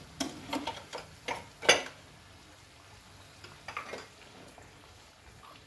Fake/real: real